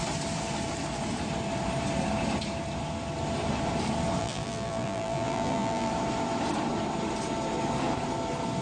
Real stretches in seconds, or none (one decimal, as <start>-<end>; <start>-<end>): 0.0-4.2; 5.9-8.6